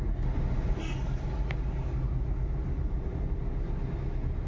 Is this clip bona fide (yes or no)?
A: yes